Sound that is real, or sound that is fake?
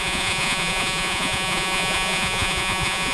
fake